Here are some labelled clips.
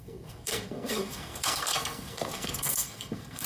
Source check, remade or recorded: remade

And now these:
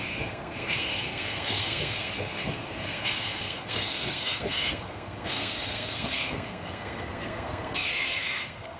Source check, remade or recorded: remade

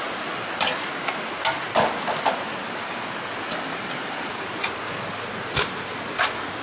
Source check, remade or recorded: recorded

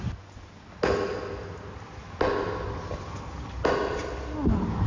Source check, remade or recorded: recorded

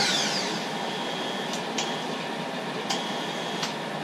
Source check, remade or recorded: recorded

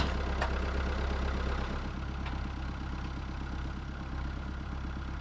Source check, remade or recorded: recorded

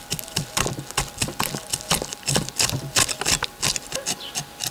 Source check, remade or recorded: recorded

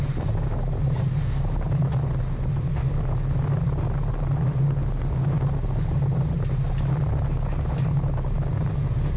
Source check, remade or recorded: recorded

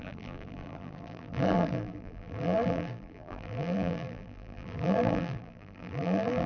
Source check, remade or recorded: remade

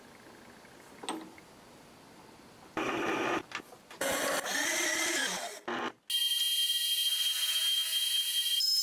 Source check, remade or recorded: recorded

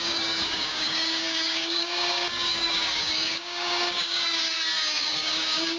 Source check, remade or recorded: remade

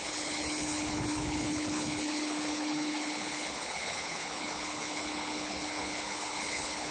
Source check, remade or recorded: remade